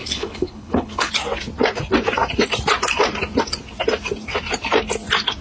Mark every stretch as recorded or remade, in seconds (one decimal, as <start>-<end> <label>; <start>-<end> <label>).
0.0-1.1 remade; 1.1-5.4 recorded